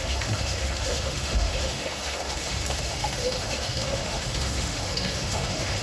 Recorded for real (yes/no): no